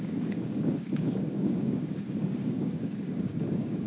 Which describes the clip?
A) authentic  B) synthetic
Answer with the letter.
B